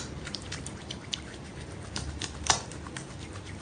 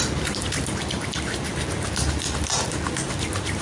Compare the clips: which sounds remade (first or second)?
first